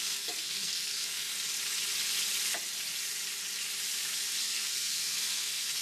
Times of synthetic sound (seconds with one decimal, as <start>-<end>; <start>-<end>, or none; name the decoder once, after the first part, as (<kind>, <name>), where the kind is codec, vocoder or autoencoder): 0.0-1.3 (codec, SNAC); 4.4-5.8